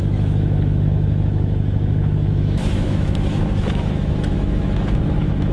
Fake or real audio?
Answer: fake